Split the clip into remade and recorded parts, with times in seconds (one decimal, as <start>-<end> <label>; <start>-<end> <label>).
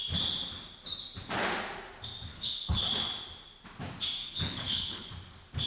0.0-2.3 recorded; 2.3-2.8 remade; 2.8-4.2 recorded; 4.2-5.1 remade; 5.1-5.7 recorded